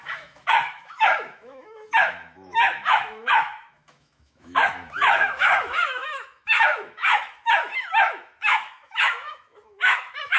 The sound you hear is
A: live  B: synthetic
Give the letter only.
B